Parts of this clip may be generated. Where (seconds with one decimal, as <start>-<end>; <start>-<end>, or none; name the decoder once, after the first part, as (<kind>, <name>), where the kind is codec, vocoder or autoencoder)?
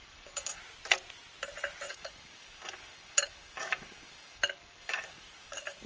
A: 0.0-0.6 (codec, DAC); 1.9-5.9